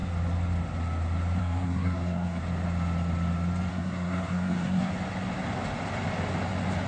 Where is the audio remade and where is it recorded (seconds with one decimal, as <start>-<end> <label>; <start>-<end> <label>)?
0.0-1.4 recorded; 1.4-2.4 remade; 2.4-3.7 recorded; 3.7-4.9 remade; 4.9-6.9 recorded